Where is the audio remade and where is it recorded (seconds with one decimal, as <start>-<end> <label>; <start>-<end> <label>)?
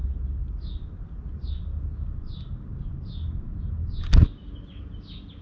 0.0-5.4 recorded